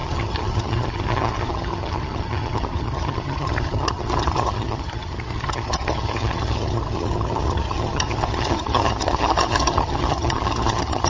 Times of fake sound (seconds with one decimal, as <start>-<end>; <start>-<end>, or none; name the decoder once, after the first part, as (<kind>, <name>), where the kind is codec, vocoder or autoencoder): 0.0-11.1 (vocoder, HiFi-GAN)